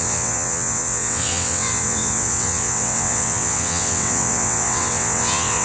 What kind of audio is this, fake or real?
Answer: fake